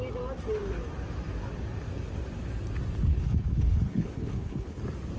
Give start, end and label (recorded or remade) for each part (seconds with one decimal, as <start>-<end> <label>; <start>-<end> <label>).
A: 0.0-3.1 recorded; 3.1-4.8 remade; 4.8-5.2 recorded